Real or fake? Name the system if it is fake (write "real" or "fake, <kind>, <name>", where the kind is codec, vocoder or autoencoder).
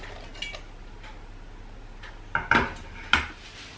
real